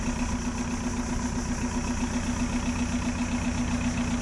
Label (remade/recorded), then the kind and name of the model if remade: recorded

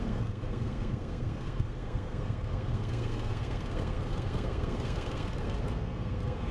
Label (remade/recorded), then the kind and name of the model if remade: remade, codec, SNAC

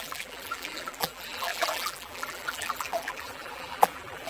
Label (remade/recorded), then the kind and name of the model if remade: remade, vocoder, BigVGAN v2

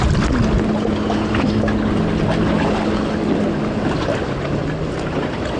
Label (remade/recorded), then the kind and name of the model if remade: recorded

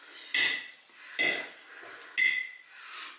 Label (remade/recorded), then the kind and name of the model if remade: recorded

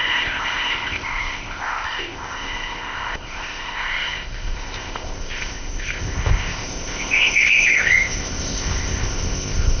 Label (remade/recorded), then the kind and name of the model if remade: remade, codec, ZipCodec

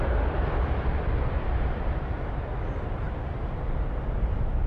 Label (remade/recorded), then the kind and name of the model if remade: recorded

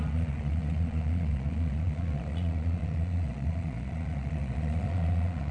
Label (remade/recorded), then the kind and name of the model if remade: remade, vocoder, Vocos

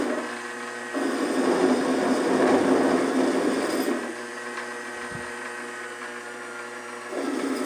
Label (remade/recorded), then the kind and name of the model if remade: recorded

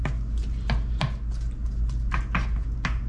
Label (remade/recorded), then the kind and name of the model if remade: recorded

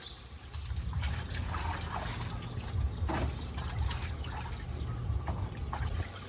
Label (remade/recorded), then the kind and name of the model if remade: recorded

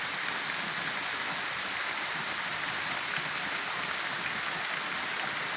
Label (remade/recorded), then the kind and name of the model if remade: recorded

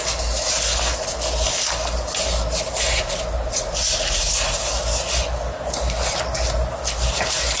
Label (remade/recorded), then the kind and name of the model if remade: recorded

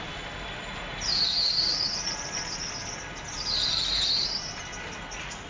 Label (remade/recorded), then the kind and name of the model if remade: recorded